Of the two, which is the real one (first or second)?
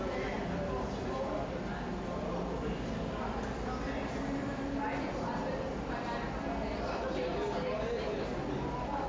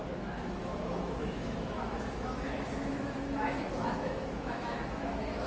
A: first